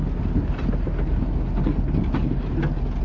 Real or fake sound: real